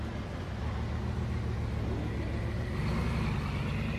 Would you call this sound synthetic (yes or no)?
no